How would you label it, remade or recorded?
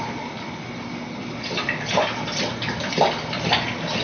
recorded